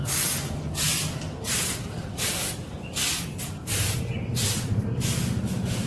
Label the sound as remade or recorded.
recorded